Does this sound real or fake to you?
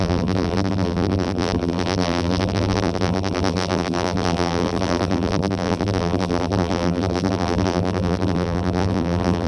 fake